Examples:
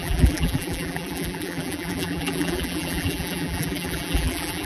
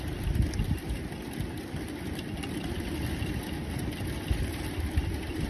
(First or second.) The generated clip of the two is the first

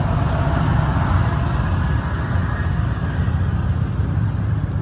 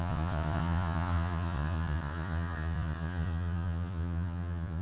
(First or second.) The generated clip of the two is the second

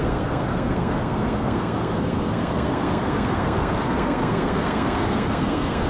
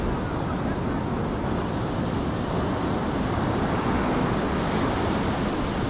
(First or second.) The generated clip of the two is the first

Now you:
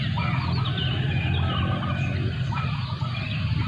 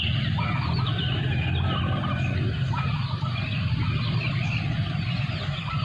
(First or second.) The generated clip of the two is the second